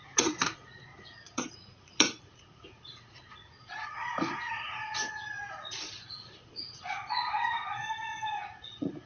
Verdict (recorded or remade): remade